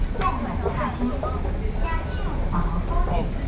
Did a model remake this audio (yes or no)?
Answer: no